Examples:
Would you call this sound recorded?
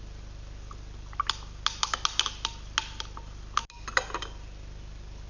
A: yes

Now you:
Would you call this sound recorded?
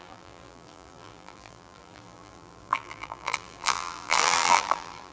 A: no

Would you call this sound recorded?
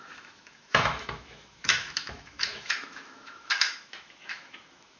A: no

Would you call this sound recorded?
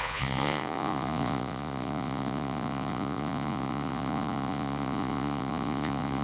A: no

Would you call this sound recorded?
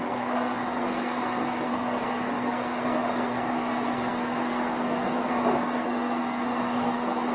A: no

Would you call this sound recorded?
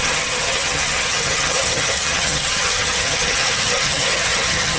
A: no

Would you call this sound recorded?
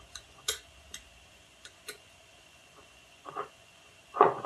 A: no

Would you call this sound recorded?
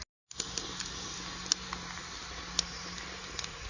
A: yes